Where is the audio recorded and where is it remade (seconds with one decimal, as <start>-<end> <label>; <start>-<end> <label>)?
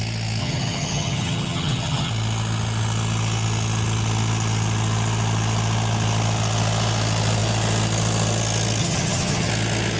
0.0-0.4 recorded; 0.4-2.1 remade; 2.1-8.8 recorded; 8.8-9.5 remade; 9.5-10.0 recorded